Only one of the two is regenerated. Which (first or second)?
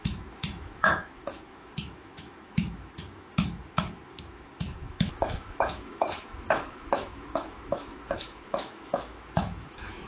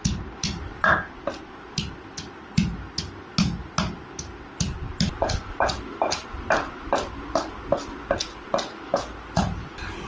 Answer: first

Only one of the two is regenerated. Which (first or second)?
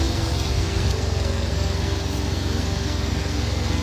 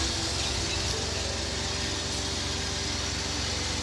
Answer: first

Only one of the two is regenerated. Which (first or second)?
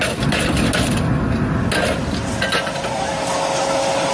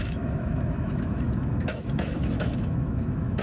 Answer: second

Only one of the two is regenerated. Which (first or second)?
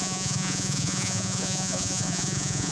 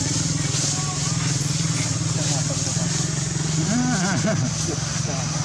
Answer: first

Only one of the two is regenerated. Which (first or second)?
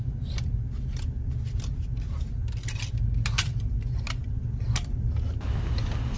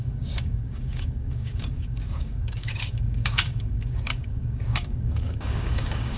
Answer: second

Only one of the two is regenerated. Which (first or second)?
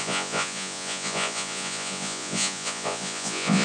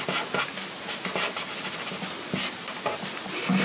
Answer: first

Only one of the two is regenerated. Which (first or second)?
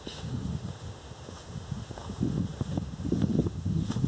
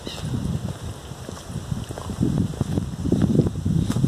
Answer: first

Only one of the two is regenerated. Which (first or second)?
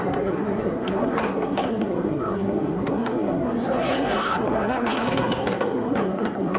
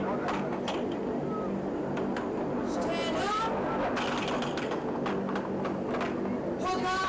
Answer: first